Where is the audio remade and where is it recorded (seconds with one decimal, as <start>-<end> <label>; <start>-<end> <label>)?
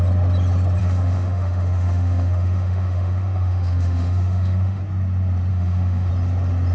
0.0-0.8 recorded; 0.8-4.8 remade; 4.8-5.5 recorded; 5.5-6.1 remade; 6.1-6.7 recorded